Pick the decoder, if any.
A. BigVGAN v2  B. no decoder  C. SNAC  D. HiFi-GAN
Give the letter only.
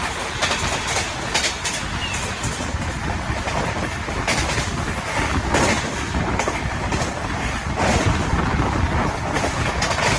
B